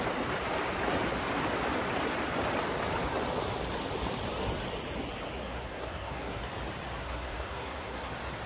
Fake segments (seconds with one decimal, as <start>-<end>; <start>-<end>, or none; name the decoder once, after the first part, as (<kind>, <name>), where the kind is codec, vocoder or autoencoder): 5.4-6.4 (codec, SNAC); 7.0-8.1